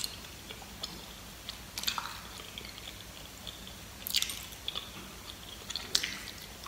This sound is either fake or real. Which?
real